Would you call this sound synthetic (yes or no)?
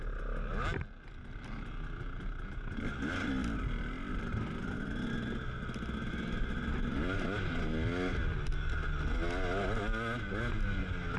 no